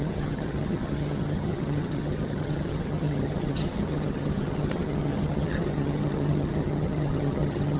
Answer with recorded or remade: remade